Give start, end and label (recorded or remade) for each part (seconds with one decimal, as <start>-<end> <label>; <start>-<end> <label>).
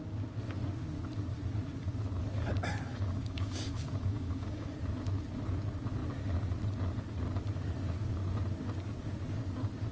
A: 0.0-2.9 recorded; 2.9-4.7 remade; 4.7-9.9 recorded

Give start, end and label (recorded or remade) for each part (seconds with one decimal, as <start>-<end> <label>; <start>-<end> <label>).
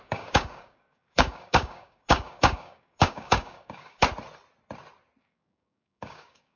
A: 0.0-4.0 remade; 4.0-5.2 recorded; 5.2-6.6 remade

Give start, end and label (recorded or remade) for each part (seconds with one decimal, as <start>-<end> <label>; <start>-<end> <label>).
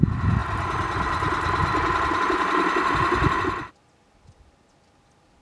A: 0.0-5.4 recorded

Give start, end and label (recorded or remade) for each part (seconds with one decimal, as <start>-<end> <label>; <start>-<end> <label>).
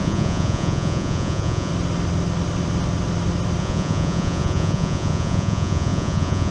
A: 0.0-1.7 remade; 1.7-3.6 recorded; 3.6-6.5 remade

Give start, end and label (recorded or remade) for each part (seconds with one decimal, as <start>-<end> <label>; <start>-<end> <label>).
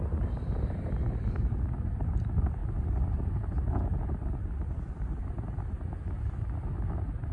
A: 0.0-7.3 recorded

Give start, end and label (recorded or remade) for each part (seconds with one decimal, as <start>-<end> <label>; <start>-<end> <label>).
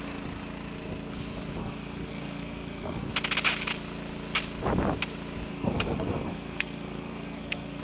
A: 0.0-1.6 recorded; 1.6-3.1 remade; 3.1-5.5 recorded; 5.5-7.8 remade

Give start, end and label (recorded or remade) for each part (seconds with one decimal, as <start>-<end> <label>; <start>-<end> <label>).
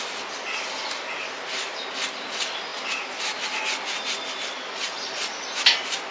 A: 0.0-6.1 recorded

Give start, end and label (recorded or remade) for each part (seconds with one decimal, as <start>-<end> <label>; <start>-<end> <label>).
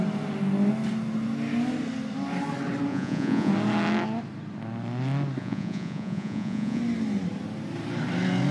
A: 0.0-2.9 recorded; 2.9-3.5 remade; 3.5-5.4 recorded; 5.4-6.8 remade; 6.8-8.5 recorded